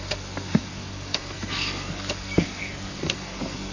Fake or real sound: fake